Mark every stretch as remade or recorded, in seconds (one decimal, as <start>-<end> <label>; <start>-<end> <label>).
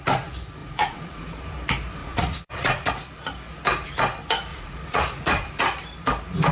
0.0-0.6 recorded; 0.6-1.4 remade; 1.4-2.0 recorded; 2.0-2.9 remade; 2.9-4.5 recorded; 4.5-5.5 remade; 5.5-6.5 recorded